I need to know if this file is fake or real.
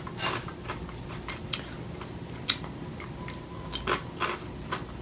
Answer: real